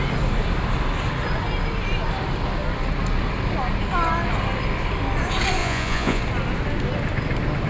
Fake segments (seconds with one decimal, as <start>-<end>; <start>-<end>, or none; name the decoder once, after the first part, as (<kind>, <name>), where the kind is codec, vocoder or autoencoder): 5.6-6.2 (vocoder, Vocos)